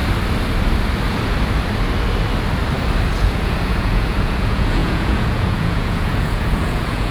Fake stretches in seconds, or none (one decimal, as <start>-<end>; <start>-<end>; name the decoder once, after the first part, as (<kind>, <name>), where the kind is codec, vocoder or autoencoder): 3.1-7.1 (vocoder, Vocos)